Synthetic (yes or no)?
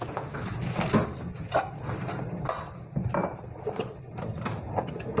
no